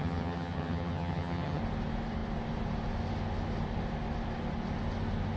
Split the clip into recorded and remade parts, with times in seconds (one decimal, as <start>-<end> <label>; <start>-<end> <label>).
0.0-1.6 remade; 1.6-5.4 recorded